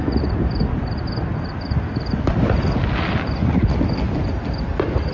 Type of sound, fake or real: real